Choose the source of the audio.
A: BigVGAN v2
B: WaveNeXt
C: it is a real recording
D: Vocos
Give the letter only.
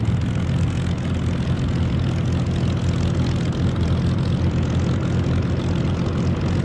C